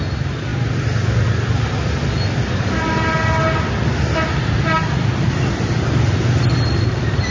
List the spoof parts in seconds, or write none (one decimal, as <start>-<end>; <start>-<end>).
none